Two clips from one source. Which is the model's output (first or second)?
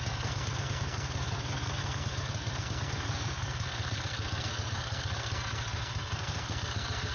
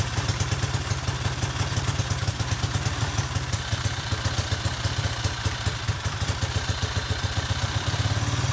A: first